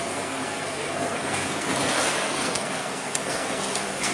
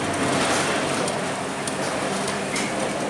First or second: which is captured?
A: second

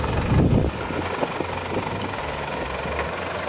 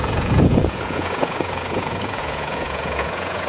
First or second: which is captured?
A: first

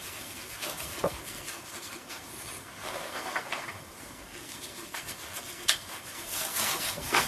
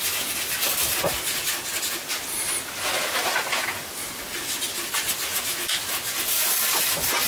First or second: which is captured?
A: second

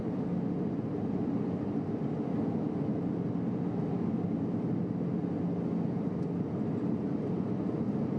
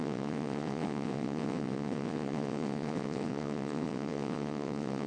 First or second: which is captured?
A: first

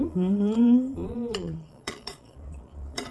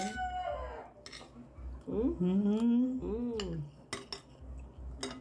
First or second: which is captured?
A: second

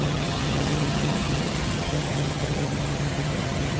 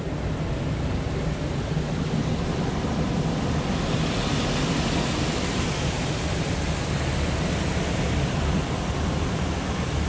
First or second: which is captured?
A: second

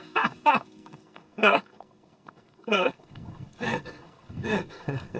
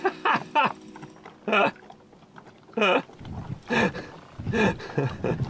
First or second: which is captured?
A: second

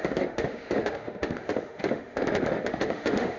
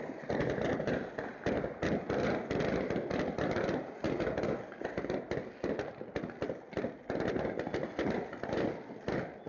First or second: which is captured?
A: second